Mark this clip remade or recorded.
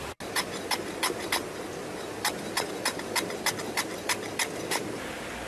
recorded